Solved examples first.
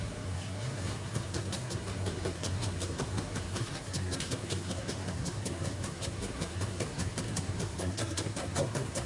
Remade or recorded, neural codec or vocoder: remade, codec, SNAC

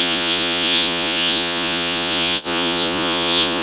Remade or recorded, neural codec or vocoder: remade, vocoder, Vocos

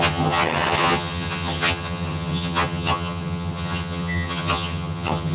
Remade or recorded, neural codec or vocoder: remade, vocoder, HiFi-GAN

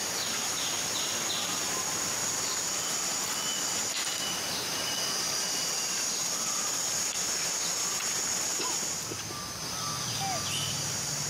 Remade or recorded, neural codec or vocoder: recorded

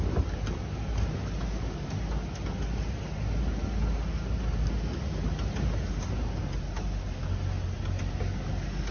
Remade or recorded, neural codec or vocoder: recorded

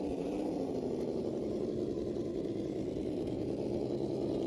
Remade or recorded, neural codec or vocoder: remade, vocoder, BigVGAN v2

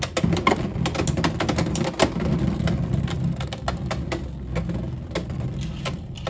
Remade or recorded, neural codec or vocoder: recorded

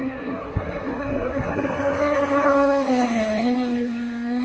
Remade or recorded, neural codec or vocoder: remade, codec, SNAC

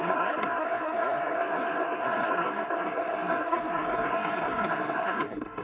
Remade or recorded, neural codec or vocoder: remade, codec, SNAC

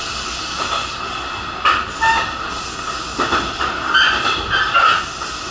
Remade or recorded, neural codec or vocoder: recorded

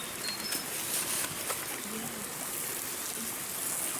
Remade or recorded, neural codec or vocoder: recorded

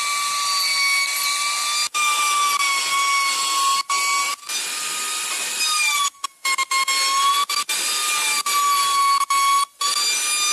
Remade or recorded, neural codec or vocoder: recorded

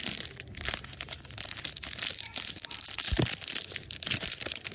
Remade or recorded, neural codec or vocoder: recorded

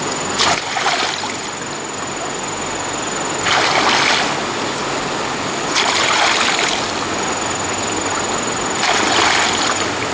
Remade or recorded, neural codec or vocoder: recorded